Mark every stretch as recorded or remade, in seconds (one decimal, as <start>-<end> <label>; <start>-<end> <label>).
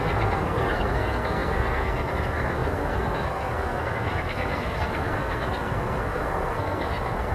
0.0-7.3 remade